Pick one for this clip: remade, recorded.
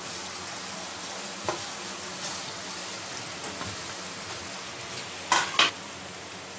recorded